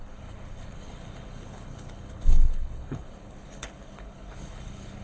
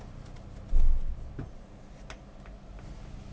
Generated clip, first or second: first